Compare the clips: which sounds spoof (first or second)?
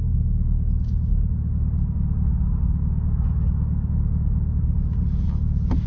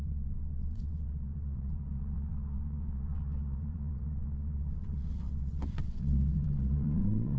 second